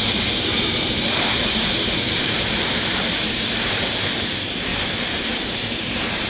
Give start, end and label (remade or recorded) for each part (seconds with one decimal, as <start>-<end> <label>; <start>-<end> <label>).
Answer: 0.0-4.7 remade; 4.7-6.3 recorded